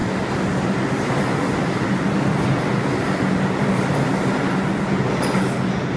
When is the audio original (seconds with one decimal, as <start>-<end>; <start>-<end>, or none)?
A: 0.0-6.0

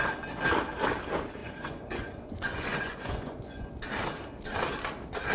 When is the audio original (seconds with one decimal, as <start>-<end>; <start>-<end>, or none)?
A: 0.0-1.4; 3.7-5.3

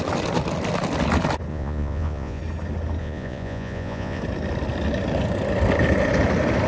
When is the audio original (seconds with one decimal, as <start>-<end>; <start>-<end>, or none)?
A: 0.0-1.5; 2.4-3.0; 4.2-6.7

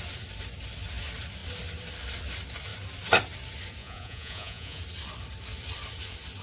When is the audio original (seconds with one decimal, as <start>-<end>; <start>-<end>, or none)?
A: 0.0-3.8; 4.8-6.4

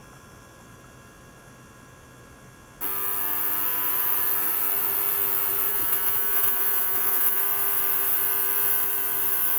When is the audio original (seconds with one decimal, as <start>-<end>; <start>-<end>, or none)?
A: 0.0-5.7; 7.4-9.6

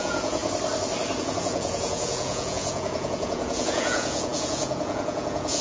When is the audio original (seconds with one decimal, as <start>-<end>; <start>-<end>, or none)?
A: 0.4-1.2

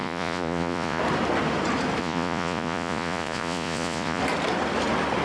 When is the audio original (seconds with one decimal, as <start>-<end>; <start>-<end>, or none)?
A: 1.0-2.0; 4.2-5.2